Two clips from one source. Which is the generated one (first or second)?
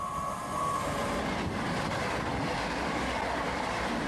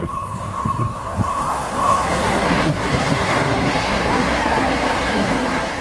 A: second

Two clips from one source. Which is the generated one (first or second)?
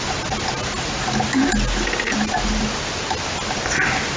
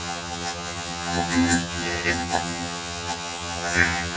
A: second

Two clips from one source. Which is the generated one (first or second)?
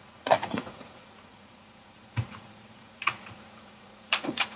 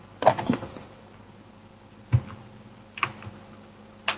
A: first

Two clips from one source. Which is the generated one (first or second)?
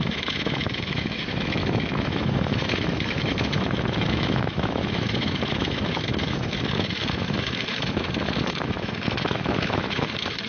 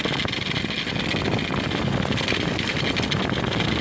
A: first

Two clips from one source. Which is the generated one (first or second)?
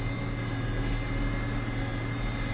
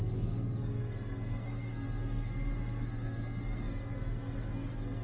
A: second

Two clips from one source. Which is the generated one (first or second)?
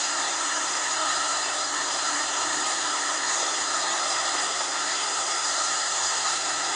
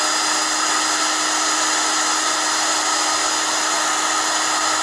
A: first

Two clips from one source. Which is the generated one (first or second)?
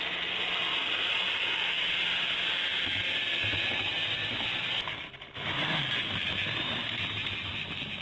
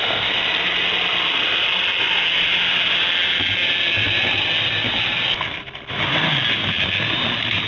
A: first